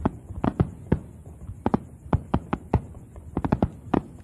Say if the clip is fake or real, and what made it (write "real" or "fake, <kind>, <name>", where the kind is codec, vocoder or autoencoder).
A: fake, vocoder, Vocos